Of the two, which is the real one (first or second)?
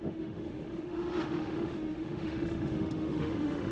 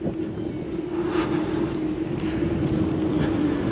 second